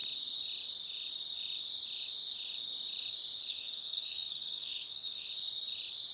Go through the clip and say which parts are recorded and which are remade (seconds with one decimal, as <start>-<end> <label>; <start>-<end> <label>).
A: 0.0-3.5 recorded; 3.5-5.3 remade; 5.3-6.1 recorded